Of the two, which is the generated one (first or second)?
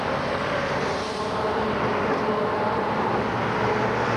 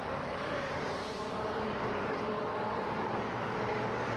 second